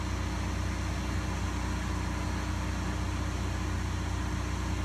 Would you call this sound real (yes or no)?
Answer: yes